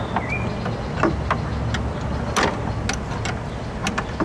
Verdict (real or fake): real